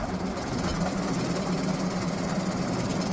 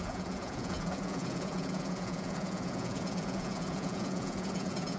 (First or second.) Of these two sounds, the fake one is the second